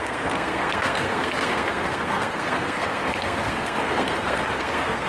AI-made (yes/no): yes